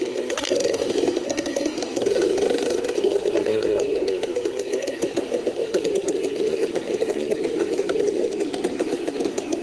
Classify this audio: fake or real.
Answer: fake